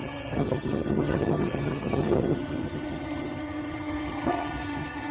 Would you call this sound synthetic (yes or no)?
yes